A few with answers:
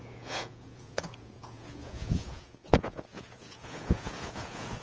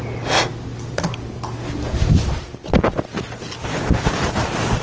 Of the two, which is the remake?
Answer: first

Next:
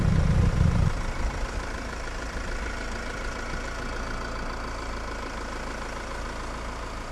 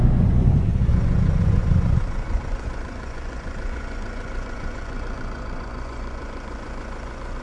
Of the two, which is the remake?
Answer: second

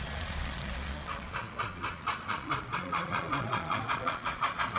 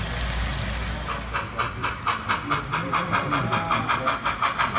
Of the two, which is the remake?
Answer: first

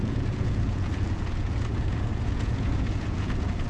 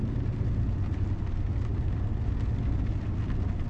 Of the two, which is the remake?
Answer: first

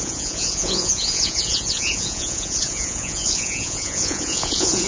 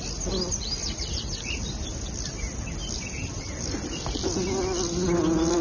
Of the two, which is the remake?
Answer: first